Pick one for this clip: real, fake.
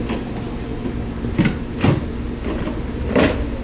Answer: real